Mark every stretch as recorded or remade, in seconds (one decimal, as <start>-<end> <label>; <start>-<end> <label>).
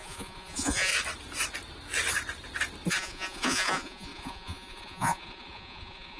0.0-0.9 remade; 0.9-2.9 recorded; 2.9-6.2 remade